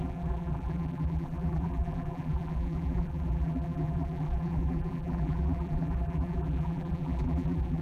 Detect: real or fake fake